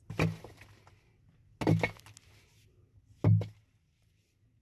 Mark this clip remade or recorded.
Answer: recorded